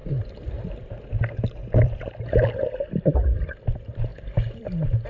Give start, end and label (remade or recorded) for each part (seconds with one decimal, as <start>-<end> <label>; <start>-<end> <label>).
0.0-5.1 recorded